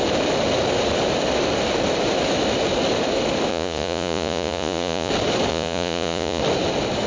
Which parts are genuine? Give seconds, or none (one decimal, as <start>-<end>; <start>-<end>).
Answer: 0.0-3.5; 5.1-5.5; 6.4-7.1